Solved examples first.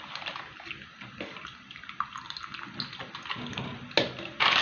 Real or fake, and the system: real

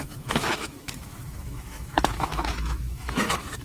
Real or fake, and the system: fake, autoencoder, DAC-VAE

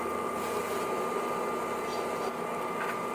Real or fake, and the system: real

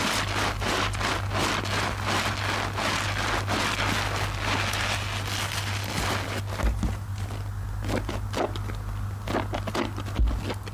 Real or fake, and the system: real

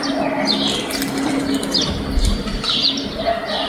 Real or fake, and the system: real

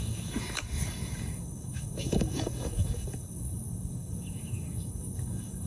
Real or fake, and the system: fake, codec, DAC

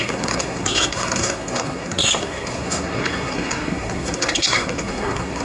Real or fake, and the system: fake, codec, SNAC